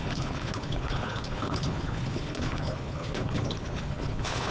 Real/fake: fake